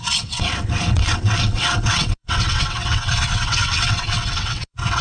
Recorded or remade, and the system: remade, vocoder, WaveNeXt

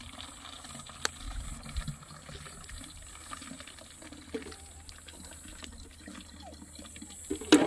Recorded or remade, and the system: recorded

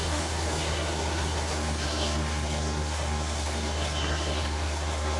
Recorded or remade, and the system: remade, codec, SNAC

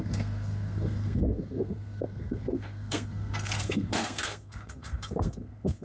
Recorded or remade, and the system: remade, codec, SNAC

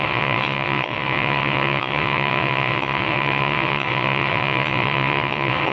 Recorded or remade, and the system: remade, vocoder, WaveNeXt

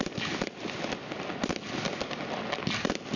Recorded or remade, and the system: recorded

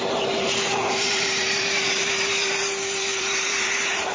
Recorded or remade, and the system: remade, vocoder, BigVGAN v2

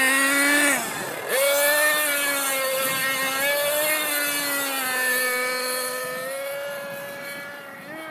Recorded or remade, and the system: recorded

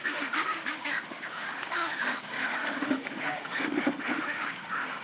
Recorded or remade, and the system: remade, autoencoder, DAC-VAE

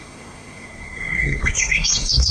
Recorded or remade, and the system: remade, codec, SNAC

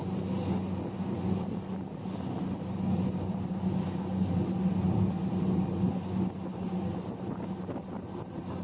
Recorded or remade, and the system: recorded